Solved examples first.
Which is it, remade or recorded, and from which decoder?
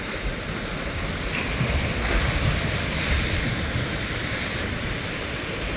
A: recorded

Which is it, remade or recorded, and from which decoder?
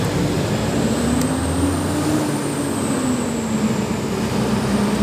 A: recorded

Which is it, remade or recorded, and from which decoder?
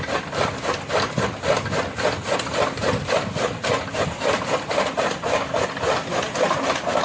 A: recorded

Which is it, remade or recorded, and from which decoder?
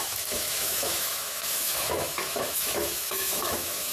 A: remade, autoencoder, DAC-VAE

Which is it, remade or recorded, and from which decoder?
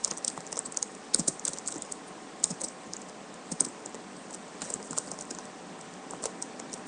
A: recorded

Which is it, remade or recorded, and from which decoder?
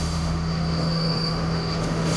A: remade, autoencoder, DAC-VAE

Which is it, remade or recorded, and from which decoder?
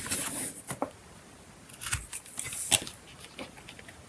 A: recorded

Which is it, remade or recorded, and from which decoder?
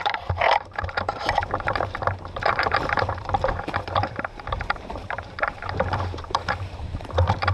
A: remade, vocoder, BigVGAN v2